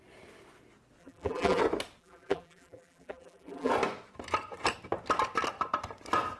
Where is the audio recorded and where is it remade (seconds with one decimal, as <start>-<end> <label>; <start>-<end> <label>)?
0.0-1.0 recorded; 1.0-1.6 remade; 1.6-2.0 recorded; 2.0-3.7 remade; 3.7-6.4 recorded